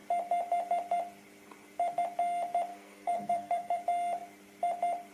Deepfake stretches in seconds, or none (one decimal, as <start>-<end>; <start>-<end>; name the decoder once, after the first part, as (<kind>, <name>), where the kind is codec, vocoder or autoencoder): 2.7-3.8 (codec, SNAC)